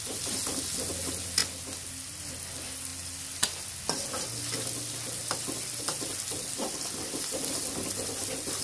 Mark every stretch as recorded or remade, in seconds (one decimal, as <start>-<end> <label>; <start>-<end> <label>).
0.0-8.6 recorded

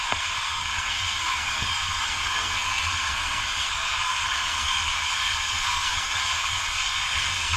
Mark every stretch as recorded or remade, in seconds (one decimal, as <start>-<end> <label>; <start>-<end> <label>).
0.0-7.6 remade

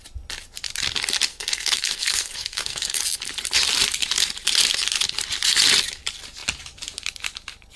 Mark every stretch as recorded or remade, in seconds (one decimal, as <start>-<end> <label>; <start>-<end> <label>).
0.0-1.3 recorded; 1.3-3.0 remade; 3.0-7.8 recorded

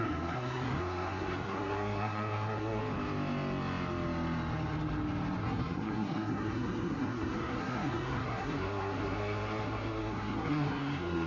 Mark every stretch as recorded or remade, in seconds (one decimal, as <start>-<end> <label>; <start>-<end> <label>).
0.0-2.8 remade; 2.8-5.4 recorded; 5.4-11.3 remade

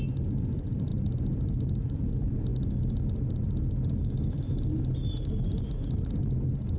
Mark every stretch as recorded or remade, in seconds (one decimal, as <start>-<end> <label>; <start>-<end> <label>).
0.0-6.8 recorded